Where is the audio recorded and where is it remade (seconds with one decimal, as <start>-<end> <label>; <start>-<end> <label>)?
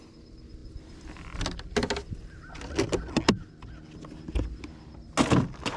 0.0-5.8 recorded